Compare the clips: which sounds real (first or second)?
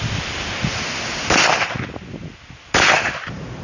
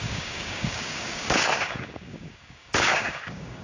first